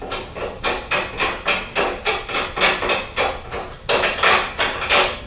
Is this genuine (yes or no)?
yes